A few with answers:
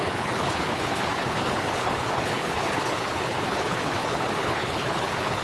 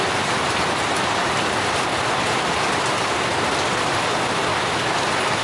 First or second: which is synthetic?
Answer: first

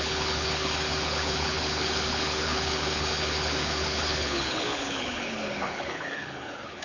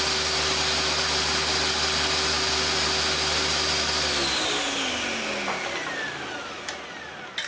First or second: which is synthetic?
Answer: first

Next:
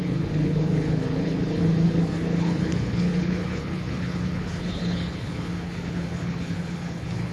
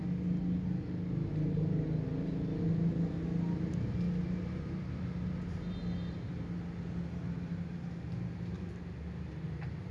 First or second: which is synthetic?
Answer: first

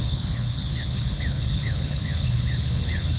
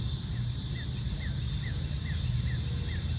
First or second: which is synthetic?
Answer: first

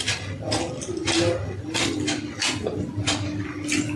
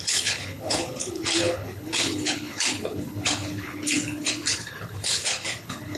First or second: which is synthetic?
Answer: second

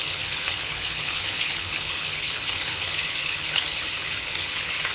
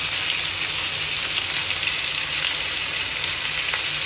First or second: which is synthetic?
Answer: first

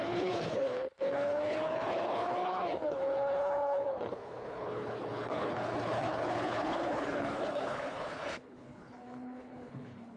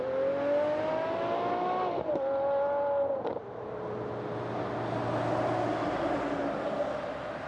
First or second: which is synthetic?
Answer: first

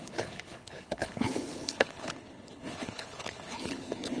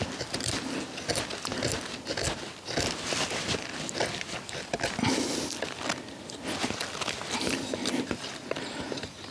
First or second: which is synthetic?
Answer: first